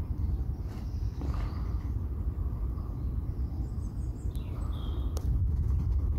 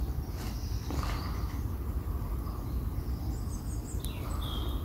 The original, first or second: second